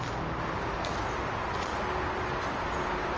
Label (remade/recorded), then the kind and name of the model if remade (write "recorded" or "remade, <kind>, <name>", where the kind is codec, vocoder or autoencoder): recorded